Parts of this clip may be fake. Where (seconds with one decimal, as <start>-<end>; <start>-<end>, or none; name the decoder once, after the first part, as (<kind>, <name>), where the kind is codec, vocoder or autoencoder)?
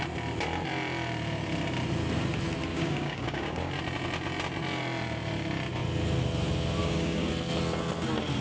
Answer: 2.7-3.7 (codec, DAC); 6.8-7.3